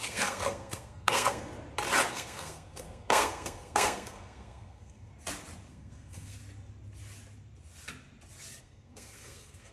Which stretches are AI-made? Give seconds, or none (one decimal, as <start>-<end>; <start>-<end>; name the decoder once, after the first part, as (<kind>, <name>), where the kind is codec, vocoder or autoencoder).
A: 0.0-1.5 (codec, SNAC); 2.1-5.1; 5.7-6.4; 8.6-9.7